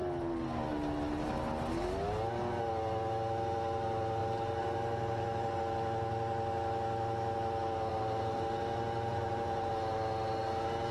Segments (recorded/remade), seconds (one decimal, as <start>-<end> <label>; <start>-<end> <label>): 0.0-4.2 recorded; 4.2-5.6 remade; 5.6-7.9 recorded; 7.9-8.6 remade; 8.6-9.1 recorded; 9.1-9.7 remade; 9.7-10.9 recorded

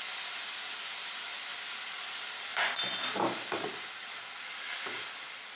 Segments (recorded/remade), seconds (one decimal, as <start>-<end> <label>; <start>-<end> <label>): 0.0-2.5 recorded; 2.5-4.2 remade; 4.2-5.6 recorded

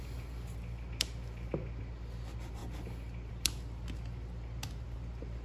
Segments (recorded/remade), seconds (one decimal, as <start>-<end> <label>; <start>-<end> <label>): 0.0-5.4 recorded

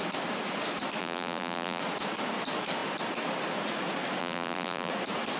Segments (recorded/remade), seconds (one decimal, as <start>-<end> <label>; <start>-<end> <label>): 0.0-1.0 recorded; 1.0-1.8 remade; 1.8-4.2 recorded; 4.2-4.9 remade; 4.9-5.4 recorded

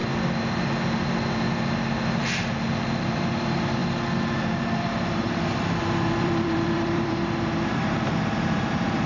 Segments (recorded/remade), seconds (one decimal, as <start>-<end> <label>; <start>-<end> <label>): 0.0-3.0 recorded; 3.0-9.1 remade